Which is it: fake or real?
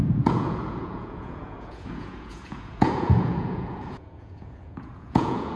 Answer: fake